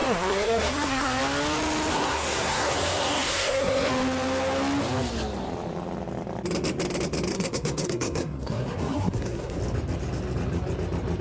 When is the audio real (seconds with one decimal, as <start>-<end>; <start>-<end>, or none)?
1.2-1.9; 3.9-7.3; 9.6-11.2